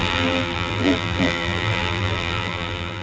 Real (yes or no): no